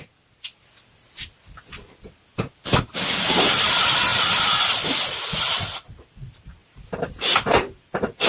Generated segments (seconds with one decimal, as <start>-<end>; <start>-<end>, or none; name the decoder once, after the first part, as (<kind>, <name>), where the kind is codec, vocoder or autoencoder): 2.3-2.9 (vocoder, BigVGAN v2); 6.6-7.7